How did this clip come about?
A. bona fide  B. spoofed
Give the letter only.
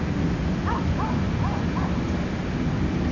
A